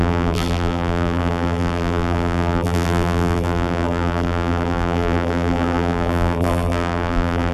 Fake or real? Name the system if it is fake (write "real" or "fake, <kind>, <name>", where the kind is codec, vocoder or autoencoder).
fake, vocoder, BigVGAN v2